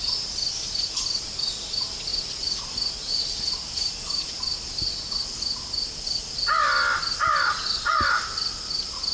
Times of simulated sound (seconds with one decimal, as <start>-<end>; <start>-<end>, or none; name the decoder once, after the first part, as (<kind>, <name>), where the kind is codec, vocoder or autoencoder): none